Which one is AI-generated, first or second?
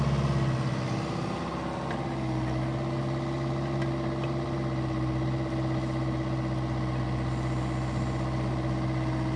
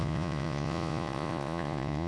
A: second